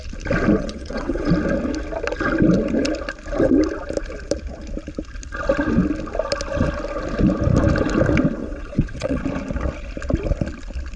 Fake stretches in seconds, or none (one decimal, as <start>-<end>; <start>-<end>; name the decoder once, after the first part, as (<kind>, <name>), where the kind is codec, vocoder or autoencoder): 0.6-1.3 (vocoder, WaveNeXt); 8.4-9.2

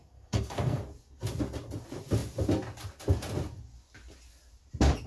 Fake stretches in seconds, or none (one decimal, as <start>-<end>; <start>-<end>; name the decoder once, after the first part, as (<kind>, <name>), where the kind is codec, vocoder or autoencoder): 0.0-0.8 (codec, SNAC)